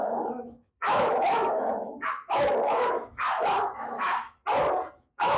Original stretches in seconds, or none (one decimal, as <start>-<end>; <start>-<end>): 4.4-5.0